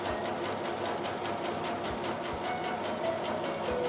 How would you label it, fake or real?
real